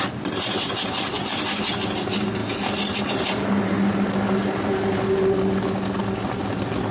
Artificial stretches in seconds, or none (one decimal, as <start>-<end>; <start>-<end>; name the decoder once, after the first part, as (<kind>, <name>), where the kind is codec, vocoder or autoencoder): none